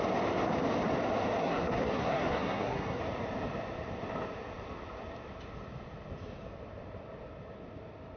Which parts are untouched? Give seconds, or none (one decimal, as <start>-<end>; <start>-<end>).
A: 0.0-1.4; 3.0-8.2